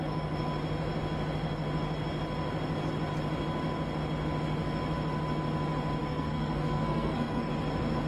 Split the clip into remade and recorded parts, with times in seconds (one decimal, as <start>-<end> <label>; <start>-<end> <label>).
0.0-6.0 recorded; 6.0-7.5 remade; 7.5-8.1 recorded